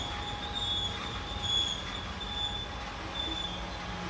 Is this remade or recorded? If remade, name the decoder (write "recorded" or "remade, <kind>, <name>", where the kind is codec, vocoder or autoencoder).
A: recorded